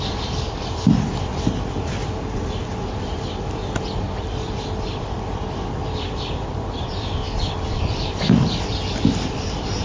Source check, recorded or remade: remade